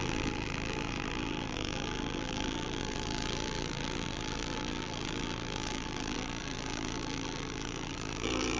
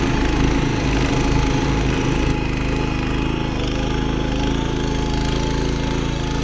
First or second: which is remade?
first